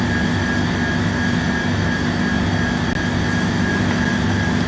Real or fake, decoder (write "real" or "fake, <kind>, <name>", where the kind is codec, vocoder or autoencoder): real